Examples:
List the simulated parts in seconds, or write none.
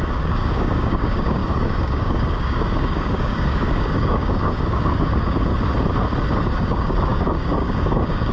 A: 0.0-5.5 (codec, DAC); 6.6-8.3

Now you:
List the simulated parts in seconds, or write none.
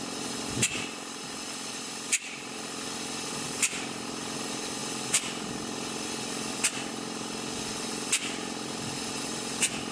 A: 0.0-9.9 (vocoder, BigVGAN v2)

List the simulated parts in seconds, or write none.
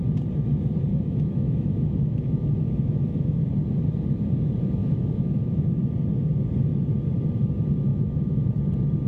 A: 0.9-3.5 (autoencoder, DAC-VAE); 4.8-5.8; 7.9-8.5